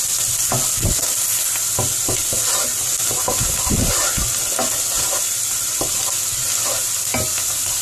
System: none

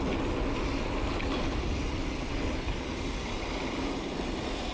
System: none